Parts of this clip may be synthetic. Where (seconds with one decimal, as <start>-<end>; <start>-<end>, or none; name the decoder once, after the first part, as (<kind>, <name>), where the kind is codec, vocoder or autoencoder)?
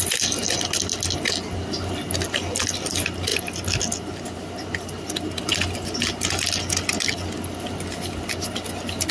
none